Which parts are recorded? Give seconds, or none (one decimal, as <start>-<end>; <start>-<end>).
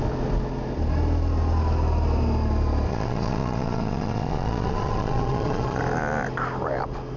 0.0-2.9; 5.8-7.2